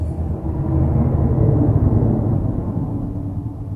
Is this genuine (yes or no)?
yes